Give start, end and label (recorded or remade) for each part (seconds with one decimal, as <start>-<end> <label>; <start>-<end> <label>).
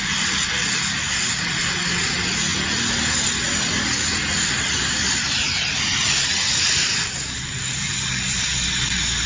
0.0-9.3 recorded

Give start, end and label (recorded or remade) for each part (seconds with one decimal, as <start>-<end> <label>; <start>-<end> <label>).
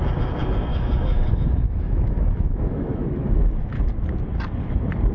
0.0-0.7 recorded; 0.7-3.8 remade; 3.8-5.1 recorded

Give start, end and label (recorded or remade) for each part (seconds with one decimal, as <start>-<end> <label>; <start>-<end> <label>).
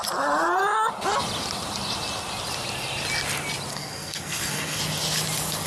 0.0-3.7 recorded; 3.7-4.8 remade; 4.8-5.7 recorded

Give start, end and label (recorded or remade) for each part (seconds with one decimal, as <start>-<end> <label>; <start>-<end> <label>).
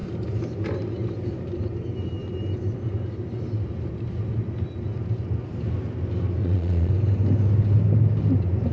0.0-6.4 recorded; 6.4-6.9 remade; 6.9-8.7 recorded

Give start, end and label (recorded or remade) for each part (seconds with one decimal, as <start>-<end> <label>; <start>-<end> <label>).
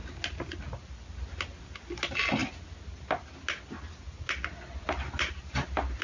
0.0-6.0 recorded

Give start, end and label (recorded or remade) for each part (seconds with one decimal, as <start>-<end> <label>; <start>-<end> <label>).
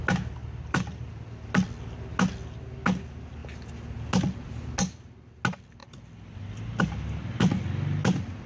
0.0-0.4 recorded; 0.4-1.1 remade; 1.1-5.8 recorded; 5.8-6.8 remade; 6.8-8.5 recorded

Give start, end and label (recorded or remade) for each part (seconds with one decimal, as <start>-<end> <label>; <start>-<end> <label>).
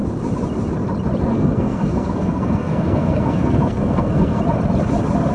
0.0-1.3 recorded; 1.3-4.4 remade; 4.4-5.3 recorded